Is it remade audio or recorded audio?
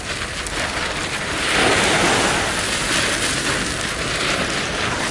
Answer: recorded